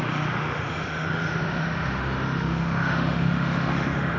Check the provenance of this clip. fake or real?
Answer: fake